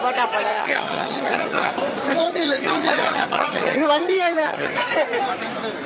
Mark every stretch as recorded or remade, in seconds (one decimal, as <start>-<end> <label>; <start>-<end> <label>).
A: 0.0-0.5 recorded; 0.5-1.7 remade; 1.7-2.1 recorded; 2.1-4.7 remade; 4.7-5.9 recorded